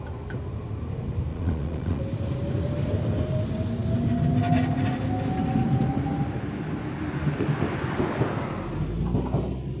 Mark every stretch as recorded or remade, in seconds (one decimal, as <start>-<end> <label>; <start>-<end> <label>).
0.0-1.3 recorded; 1.3-2.0 remade; 2.0-9.8 recorded